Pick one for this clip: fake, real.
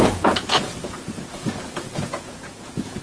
fake